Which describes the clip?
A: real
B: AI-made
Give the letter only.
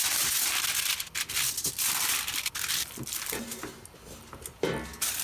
A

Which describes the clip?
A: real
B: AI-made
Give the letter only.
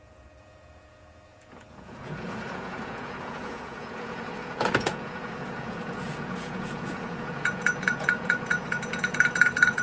B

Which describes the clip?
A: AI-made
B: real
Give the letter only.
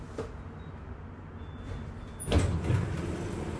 B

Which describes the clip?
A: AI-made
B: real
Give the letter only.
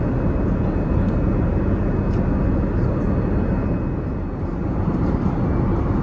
B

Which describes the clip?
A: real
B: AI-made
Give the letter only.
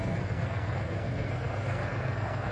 B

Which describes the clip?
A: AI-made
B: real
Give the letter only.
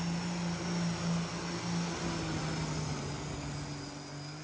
B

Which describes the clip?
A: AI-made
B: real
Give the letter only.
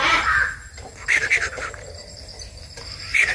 A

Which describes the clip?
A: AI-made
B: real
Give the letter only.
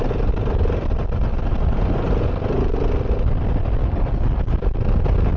B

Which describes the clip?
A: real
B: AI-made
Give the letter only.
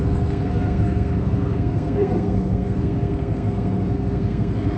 B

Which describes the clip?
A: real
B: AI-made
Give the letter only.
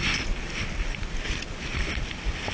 A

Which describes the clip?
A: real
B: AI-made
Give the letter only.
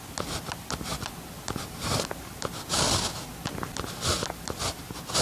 A